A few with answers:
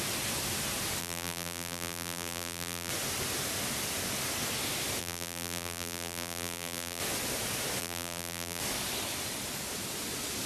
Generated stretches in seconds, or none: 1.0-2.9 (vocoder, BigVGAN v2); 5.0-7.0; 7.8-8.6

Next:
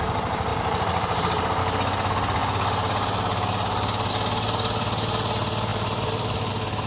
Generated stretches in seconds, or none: 0.5-1.6 (vocoder, BigVGAN v2); 5.7-6.5